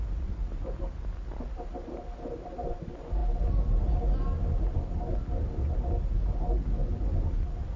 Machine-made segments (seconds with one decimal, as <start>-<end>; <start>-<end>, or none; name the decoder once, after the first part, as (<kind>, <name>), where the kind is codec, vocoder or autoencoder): none